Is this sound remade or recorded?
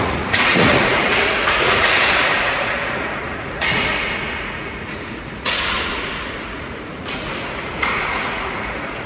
remade